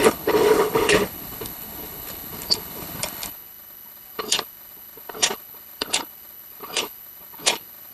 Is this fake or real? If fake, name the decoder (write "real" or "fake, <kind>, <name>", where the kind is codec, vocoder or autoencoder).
fake, codec, HILCodec